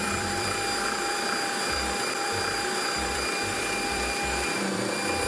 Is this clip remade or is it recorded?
remade